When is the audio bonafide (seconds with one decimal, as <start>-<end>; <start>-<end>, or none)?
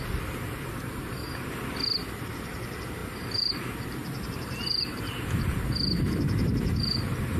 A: 1.2-2.2